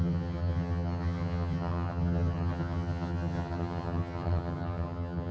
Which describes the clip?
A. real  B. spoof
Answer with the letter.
B